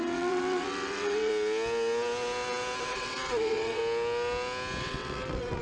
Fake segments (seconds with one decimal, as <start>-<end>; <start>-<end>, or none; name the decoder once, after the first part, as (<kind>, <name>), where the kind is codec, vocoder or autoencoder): 0.0-1.3 (vocoder, WaveNeXt); 2.8-3.8; 4.8-5.6